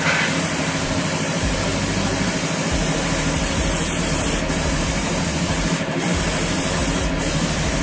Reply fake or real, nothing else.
fake